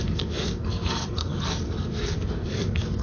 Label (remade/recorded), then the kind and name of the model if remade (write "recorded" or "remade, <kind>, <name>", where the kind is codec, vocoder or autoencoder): remade, codec, SNAC